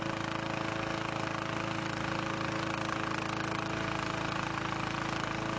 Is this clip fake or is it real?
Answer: real